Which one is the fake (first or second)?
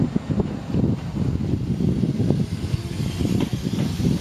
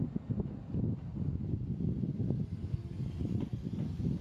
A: first